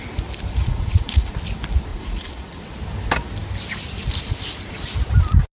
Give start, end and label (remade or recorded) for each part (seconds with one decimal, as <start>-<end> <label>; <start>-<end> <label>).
0.0-0.6 recorded; 0.6-1.3 remade; 1.3-1.9 recorded; 1.9-2.6 remade; 2.6-5.6 recorded